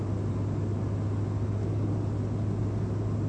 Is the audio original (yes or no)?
yes